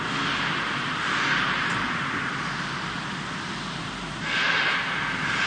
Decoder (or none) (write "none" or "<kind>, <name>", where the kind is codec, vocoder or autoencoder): none